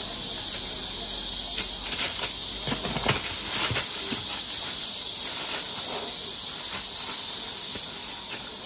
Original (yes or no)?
yes